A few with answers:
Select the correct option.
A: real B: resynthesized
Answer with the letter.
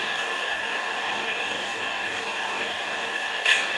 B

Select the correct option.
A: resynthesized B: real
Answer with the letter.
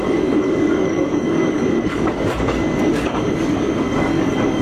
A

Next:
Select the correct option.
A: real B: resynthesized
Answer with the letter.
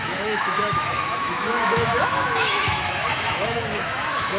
B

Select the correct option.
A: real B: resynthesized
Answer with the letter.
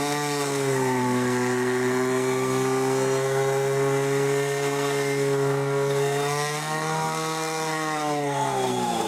B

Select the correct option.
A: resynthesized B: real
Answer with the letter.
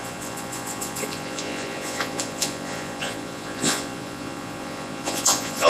A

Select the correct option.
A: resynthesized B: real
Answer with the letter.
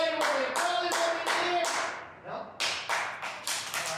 B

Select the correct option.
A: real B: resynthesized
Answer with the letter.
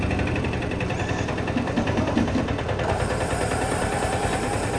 B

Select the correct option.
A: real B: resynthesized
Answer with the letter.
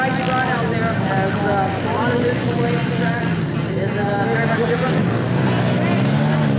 A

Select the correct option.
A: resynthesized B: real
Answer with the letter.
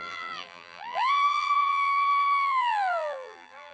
A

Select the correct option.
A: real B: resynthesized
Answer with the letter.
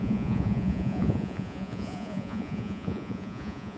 B